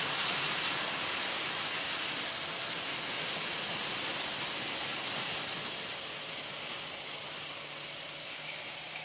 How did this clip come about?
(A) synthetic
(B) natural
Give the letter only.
B